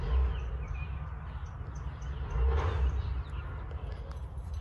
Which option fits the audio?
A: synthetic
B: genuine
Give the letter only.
B